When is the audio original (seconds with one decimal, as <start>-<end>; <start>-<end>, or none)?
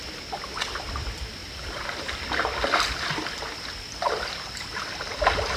0.0-5.6